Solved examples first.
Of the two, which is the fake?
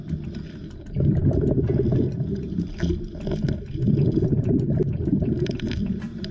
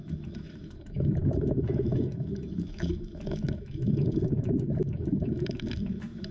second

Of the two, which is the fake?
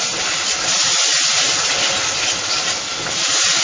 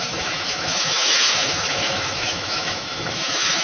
second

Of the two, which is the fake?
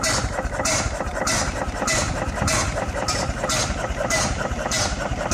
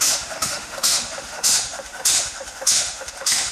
second